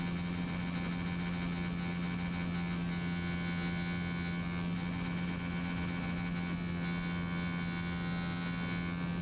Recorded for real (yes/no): yes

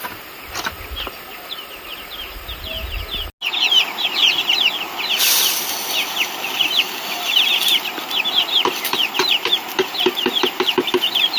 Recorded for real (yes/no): yes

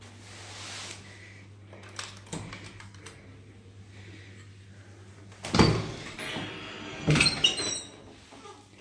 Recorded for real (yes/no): yes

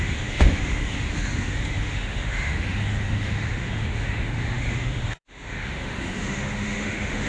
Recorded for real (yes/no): no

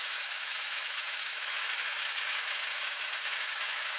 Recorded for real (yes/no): no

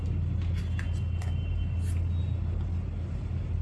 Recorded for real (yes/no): yes